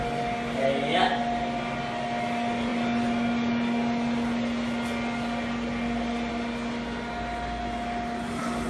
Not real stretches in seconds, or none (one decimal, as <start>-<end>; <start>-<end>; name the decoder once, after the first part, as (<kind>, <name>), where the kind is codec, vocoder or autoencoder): none